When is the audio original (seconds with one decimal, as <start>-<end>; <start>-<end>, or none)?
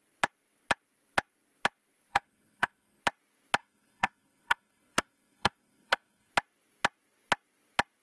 0.0-2.1; 3.0-3.6; 6.3-8.0